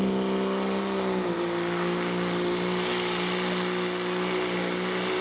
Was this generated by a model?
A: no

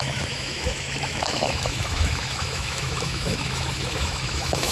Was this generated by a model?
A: yes